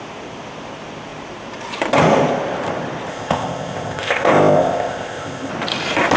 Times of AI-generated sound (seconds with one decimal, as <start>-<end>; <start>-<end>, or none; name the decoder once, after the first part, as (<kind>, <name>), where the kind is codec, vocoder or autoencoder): 3.1-5.5 (codec, ZipCodec)